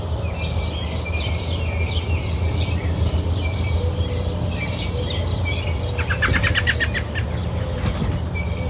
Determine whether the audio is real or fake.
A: real